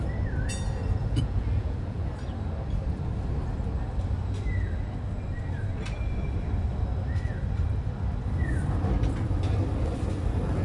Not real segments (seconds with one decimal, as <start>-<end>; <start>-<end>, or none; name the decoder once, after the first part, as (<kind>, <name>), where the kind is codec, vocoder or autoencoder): 1.0-2.1 (vocoder, Vocos)